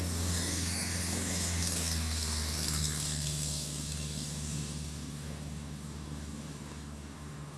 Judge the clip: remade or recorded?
remade